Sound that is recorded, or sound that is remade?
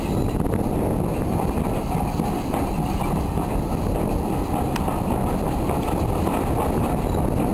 recorded